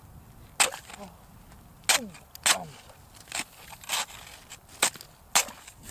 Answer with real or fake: real